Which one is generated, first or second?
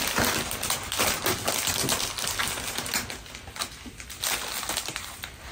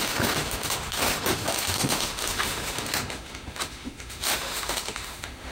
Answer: second